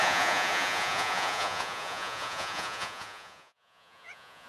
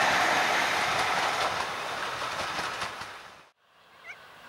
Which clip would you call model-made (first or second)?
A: first